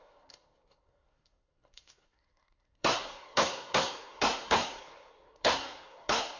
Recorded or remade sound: remade